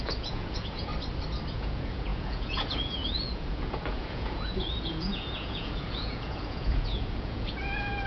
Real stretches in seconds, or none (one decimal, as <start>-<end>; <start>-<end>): 0.9-1.5